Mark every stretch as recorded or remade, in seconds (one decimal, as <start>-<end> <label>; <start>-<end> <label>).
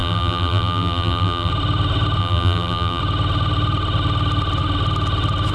0.0-1.5 remade; 1.5-2.2 recorded; 2.2-3.0 remade; 3.0-5.5 recorded